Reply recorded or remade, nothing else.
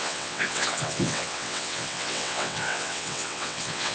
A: remade